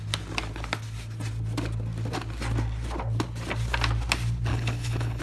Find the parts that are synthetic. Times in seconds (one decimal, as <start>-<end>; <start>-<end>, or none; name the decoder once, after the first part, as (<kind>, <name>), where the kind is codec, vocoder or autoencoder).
4.5-5.2 (codec, HILCodec)